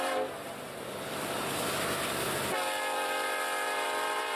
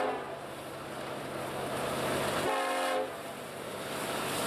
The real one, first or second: second